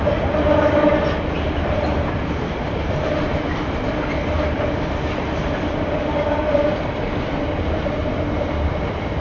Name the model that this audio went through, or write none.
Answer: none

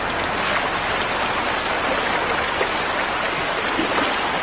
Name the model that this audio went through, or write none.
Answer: none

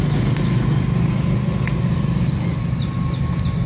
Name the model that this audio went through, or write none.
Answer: none